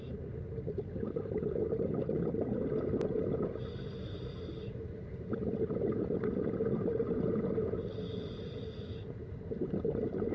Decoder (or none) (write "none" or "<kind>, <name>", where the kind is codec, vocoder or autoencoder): none